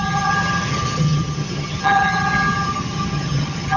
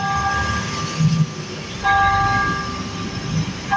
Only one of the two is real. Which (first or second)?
second